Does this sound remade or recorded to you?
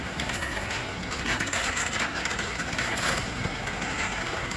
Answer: remade